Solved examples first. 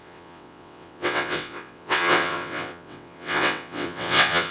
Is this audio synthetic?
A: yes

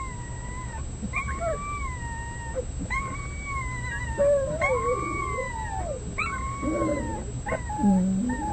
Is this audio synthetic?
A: no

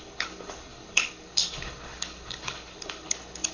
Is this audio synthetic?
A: yes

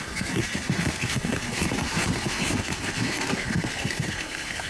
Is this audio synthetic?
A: yes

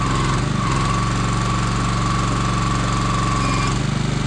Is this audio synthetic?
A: no